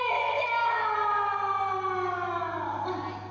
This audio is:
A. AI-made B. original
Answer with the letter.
B